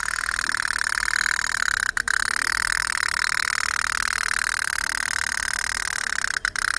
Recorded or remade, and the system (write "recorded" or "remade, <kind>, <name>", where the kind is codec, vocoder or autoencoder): recorded